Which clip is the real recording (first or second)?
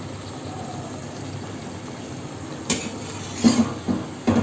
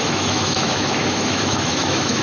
first